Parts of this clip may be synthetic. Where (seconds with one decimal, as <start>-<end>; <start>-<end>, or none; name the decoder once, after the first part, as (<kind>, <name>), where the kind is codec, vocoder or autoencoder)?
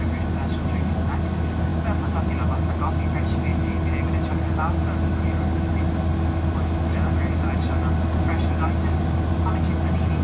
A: none